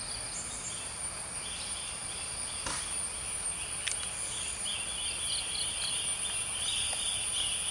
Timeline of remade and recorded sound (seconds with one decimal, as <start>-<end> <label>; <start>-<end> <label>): 0.0-7.7 recorded